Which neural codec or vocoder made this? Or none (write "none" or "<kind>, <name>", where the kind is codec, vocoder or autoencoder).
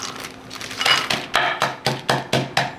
none